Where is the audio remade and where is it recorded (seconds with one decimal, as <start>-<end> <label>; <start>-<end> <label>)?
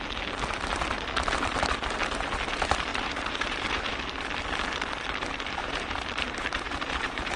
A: 0.0-2.9 recorded; 2.9-3.9 remade; 3.9-5.6 recorded; 5.6-7.4 remade